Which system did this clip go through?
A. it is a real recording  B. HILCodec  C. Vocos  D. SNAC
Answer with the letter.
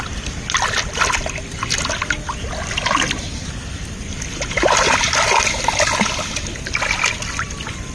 A